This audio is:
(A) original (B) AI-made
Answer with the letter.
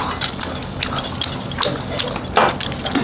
A